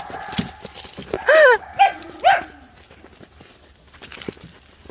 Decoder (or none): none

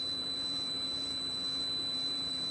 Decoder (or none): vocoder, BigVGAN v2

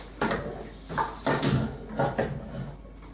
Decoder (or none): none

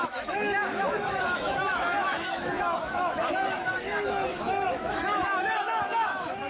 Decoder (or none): autoencoder, DAC-VAE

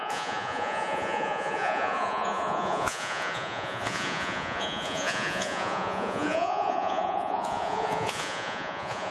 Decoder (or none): vocoder, Vocos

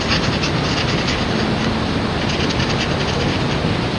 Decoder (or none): none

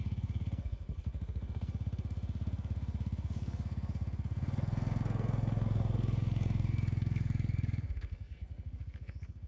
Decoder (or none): codec, SNAC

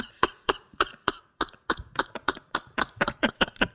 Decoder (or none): vocoder, Vocos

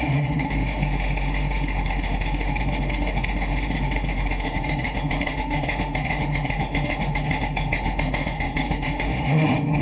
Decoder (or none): autoencoder, DAC-VAE